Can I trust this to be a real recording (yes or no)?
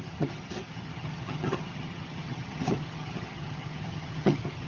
no